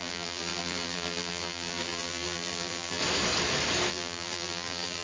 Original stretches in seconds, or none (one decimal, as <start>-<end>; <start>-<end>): 3.0-3.9